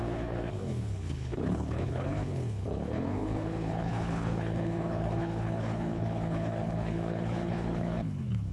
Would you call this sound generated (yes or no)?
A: yes